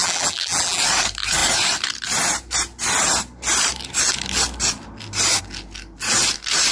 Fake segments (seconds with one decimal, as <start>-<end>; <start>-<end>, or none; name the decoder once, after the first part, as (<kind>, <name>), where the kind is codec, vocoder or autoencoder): 0.0-0.8 (vocoder, BigVGAN v2)